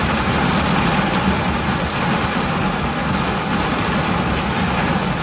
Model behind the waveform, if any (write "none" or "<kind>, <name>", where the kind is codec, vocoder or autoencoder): none